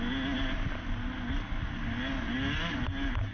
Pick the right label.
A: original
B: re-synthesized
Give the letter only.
A